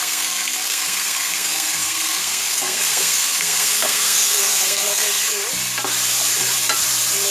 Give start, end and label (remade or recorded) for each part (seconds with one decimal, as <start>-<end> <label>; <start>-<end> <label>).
0.0-5.4 remade; 5.4-7.3 recorded